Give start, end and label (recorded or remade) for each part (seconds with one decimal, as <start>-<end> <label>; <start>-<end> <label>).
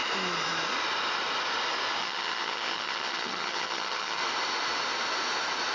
0.0-2.0 recorded; 2.0-4.2 remade; 4.2-5.7 recorded